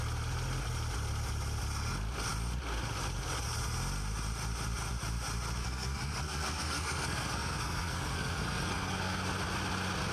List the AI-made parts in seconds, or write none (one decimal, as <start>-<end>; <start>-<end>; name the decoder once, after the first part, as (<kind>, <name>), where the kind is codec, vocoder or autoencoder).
5.6-9.2 (codec, SNAC)